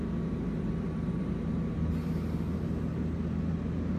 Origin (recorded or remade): recorded